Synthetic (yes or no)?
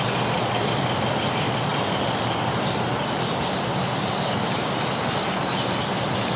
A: no